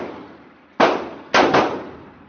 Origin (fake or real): real